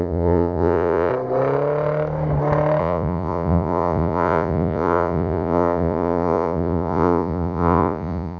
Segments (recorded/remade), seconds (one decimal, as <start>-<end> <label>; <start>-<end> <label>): 0.0-1.1 remade; 1.1-2.8 recorded; 2.8-8.4 remade